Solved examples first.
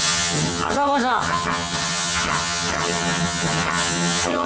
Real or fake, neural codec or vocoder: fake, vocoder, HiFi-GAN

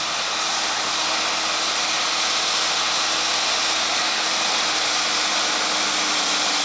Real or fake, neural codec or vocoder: real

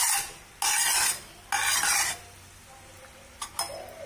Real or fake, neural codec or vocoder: real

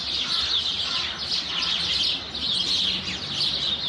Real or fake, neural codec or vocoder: real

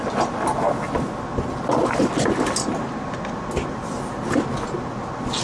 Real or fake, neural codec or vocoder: real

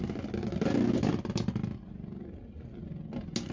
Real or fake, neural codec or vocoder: real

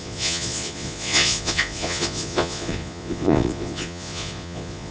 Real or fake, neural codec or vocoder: fake, vocoder, Vocos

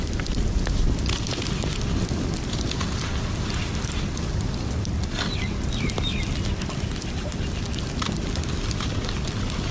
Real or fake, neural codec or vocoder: real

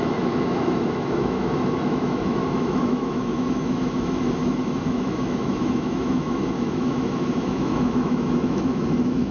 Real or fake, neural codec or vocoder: fake, autoencoder, DAC-VAE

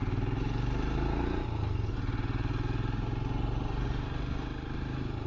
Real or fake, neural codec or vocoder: real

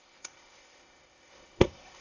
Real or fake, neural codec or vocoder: fake, codec, ZipCodec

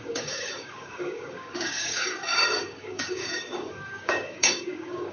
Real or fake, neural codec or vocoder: fake, codec, DAC